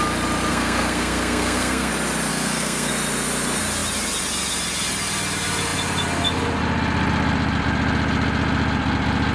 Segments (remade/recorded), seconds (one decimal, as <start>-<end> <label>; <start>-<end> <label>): 0.0-0.5 recorded; 0.5-1.9 remade; 1.9-2.3 recorded; 2.3-2.9 remade; 2.9-9.3 recorded